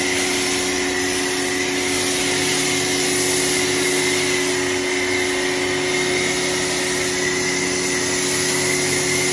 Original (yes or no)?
yes